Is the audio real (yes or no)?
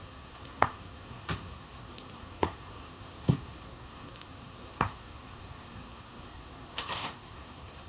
no